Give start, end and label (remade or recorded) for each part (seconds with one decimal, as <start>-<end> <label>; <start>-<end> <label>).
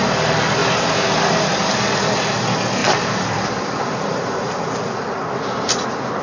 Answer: 0.0-0.6 recorded; 0.6-1.8 remade; 1.8-2.8 recorded; 2.8-4.6 remade; 4.6-6.2 recorded